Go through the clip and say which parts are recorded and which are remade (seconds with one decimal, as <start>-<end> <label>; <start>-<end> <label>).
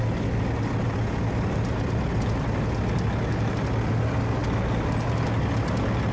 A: 0.0-6.1 recorded